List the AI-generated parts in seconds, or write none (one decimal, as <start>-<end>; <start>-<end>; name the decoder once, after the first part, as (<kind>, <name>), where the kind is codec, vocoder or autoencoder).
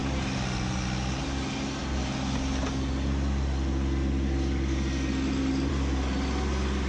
none